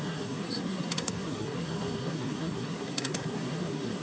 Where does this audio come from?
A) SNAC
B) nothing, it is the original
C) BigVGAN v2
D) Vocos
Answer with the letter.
A